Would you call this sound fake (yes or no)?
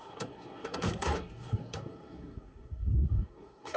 yes